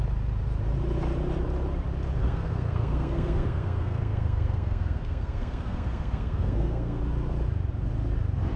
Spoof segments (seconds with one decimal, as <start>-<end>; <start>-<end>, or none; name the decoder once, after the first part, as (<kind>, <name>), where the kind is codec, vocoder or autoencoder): 2.2-7.0 (codec, SNAC)